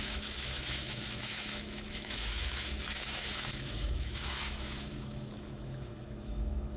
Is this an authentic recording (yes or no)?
no